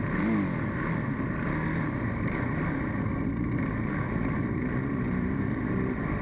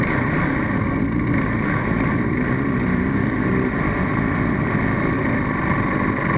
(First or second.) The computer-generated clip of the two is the first